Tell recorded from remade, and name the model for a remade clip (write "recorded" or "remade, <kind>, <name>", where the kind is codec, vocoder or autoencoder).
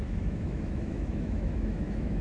remade, autoencoder, DAC-VAE